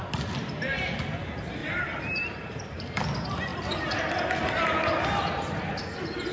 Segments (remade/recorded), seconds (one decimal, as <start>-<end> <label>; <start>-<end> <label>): 0.0-1.6 recorded; 1.6-3.0 remade; 3.0-6.3 recorded